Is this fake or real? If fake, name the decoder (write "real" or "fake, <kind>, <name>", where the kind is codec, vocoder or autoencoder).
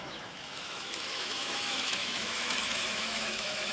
fake, autoencoder, DAC-VAE